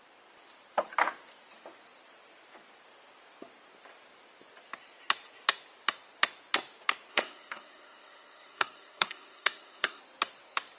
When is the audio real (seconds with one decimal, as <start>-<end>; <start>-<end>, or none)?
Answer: 0.0-7.1; 10.0-10.8